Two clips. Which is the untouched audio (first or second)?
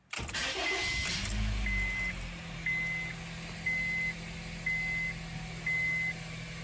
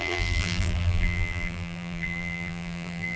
first